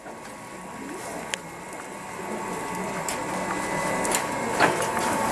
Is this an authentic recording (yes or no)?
yes